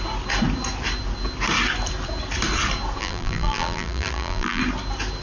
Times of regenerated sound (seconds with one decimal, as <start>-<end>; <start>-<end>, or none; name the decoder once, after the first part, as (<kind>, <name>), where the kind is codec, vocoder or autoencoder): 3.0-4.6 (vocoder, BigVGAN v2)